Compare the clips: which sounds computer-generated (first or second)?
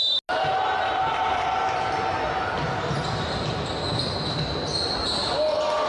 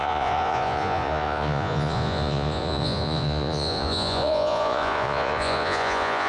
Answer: second